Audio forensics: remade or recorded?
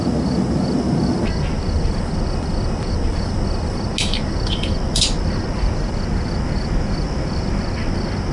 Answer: recorded